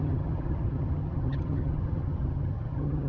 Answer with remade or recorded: remade